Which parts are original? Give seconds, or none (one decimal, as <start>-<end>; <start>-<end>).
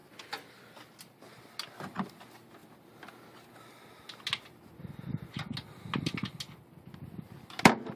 0.0-8.0